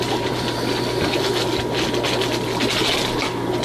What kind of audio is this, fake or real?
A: real